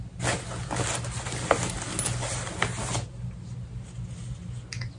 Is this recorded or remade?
recorded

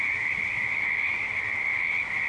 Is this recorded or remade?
recorded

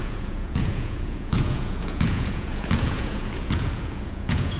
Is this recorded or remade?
remade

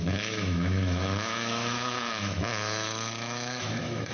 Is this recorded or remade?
remade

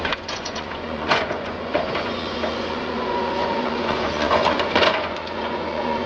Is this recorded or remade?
remade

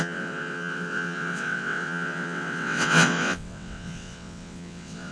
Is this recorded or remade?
remade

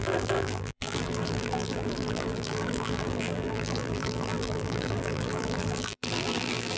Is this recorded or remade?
remade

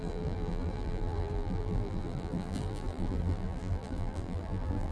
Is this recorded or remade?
remade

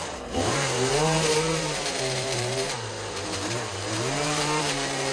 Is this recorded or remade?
remade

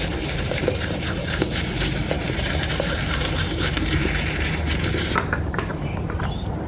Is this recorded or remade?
remade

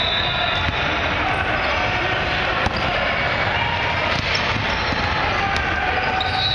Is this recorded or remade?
recorded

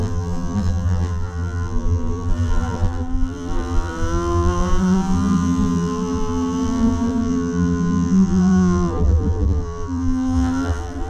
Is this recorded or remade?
remade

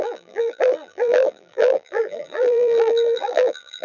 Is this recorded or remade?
remade